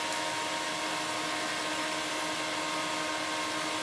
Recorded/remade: recorded